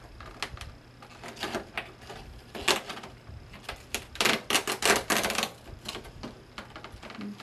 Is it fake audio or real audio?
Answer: real